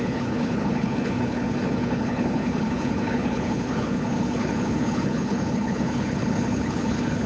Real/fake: fake